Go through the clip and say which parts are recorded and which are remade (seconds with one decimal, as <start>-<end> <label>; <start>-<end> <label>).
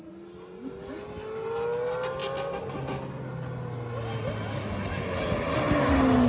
0.0-6.3 recorded